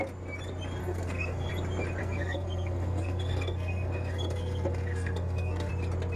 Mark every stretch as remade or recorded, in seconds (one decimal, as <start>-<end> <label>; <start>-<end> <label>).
0.0-0.8 recorded; 0.8-1.5 remade; 1.5-2.0 recorded; 2.0-5.7 remade; 5.7-6.2 recorded